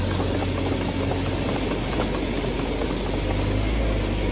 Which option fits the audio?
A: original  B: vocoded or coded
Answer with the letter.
A